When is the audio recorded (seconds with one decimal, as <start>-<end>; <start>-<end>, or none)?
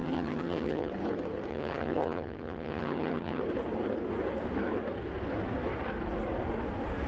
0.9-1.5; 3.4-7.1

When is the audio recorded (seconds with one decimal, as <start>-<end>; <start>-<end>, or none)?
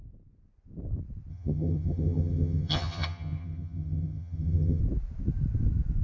0.0-1.3; 4.8-6.0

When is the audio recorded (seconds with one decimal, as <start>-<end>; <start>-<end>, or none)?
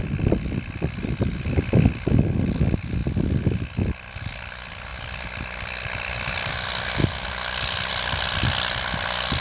0.0-9.4